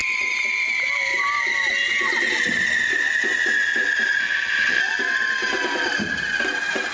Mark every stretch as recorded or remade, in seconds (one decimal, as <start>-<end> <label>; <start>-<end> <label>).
0.0-4.2 recorded; 4.2-4.8 remade; 4.8-6.9 recorded